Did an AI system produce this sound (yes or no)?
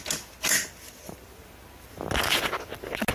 no